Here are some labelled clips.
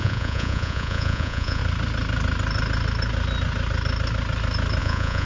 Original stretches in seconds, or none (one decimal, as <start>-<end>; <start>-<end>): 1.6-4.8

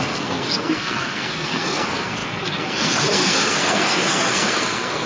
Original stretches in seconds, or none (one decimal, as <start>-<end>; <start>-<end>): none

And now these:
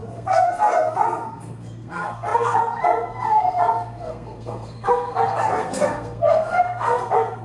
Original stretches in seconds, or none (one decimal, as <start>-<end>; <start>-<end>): none

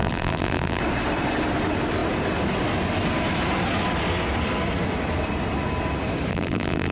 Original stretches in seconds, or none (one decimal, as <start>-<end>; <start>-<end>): 0.8-6.3

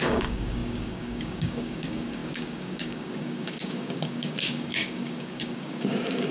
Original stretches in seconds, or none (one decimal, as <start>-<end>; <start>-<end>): none

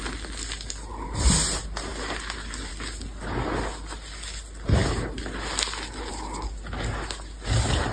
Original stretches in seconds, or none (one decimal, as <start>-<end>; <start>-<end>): 0.0-7.9